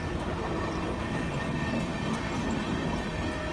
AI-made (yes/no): no